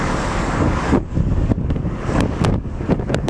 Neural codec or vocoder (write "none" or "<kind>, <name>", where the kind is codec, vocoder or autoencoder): codec, DAC